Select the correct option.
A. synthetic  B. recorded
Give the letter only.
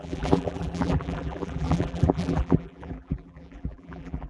A